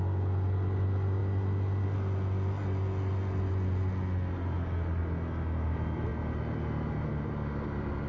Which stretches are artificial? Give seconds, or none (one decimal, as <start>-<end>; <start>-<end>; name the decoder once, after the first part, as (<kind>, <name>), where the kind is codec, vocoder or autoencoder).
none